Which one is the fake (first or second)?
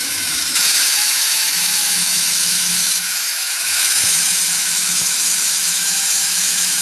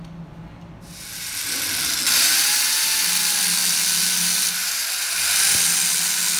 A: first